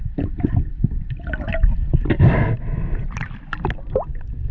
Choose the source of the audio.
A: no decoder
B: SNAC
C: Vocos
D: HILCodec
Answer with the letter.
A